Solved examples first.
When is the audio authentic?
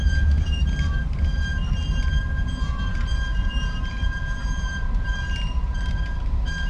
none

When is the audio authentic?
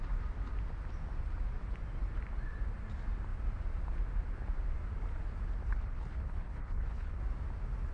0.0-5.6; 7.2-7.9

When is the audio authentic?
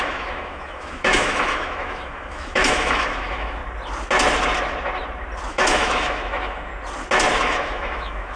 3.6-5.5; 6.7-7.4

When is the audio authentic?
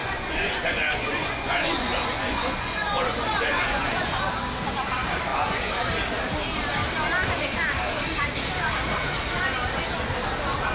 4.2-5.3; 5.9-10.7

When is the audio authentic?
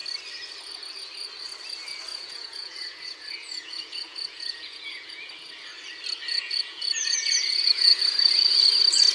0.0-2.1; 5.3-6.3; 8.7-9.1